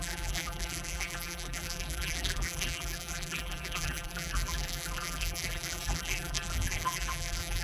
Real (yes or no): no